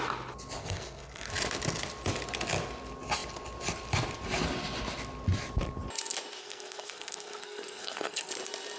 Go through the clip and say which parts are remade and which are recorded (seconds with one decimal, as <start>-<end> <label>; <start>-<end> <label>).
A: 0.0-0.6 recorded; 0.6-1.3 remade; 1.3-6.4 recorded; 6.4-8.3 remade; 8.3-8.8 recorded